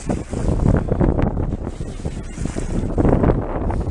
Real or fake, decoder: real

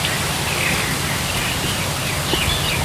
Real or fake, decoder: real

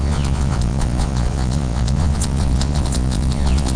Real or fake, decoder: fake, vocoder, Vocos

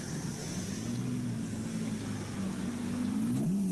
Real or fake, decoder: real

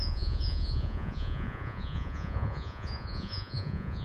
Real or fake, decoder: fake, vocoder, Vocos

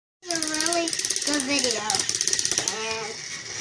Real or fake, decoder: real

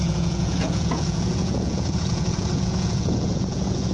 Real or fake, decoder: fake, vocoder, Vocos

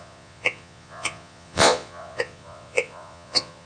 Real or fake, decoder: fake, vocoder, Vocos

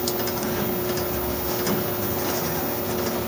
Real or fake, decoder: real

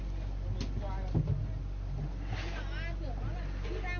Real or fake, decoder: real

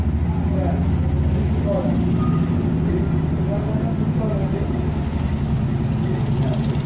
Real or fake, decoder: real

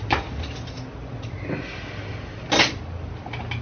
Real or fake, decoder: real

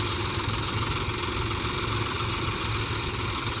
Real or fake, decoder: real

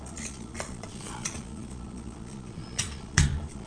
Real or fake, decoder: fake, vocoder, Vocos